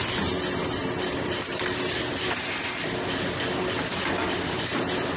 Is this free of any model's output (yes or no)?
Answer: yes